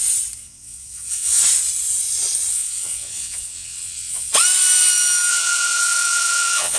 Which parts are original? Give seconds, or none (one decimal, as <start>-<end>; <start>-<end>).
0.0-0.4; 1.4-2.5; 4.3-5.3